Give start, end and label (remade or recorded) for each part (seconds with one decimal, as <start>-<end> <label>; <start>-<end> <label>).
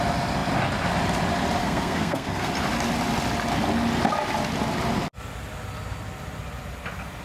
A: 0.0-1.6 recorded; 1.6-2.5 remade; 2.5-7.2 recorded